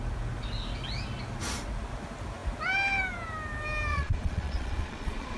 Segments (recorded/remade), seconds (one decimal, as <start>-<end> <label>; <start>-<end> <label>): 0.0-3.9 recorded; 3.9-5.4 remade